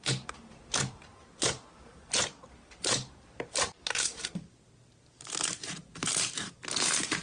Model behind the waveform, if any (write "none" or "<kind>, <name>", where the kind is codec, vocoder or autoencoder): vocoder, BigVGAN v2